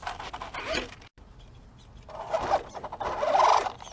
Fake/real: real